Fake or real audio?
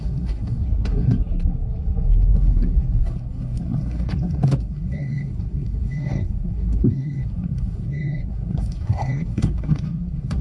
fake